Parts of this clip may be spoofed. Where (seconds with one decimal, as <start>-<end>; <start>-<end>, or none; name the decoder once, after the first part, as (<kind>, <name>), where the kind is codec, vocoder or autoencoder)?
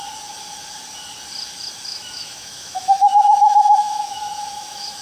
1.9-5.0 (autoencoder, DAC-VAE)